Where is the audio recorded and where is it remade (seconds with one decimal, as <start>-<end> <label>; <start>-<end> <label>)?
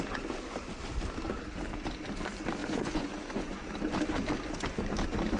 0.0-2.6 recorded; 2.6-3.6 remade; 3.6-5.4 recorded